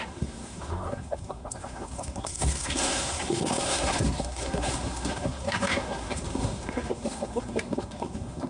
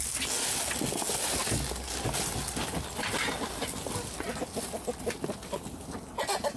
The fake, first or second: first